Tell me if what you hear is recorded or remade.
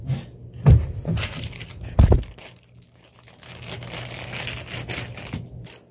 recorded